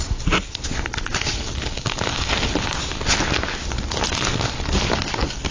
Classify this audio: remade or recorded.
recorded